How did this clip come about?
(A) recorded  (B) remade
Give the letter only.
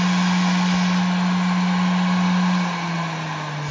A